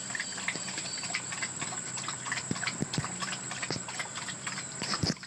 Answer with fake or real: fake